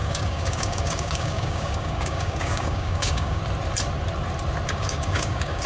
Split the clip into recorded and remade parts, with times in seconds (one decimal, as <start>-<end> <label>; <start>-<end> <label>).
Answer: 0.0-3.4 remade; 3.4-4.7 recorded; 4.7-5.7 remade